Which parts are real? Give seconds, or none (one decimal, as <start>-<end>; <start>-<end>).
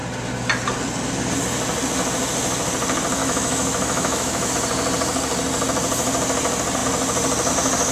0.0-3.2; 4.5-7.9